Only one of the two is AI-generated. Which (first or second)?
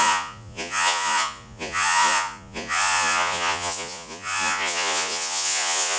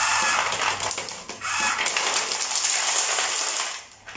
first